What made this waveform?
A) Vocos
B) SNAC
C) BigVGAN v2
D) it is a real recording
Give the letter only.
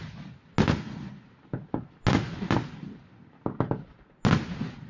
D